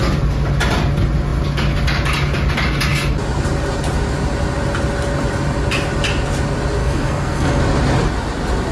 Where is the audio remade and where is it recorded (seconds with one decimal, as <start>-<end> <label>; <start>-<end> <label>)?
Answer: 0.0-6.8 recorded; 6.8-7.6 remade; 7.6-8.7 recorded